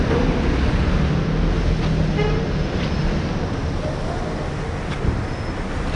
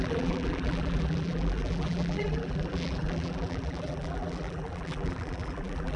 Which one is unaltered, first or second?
first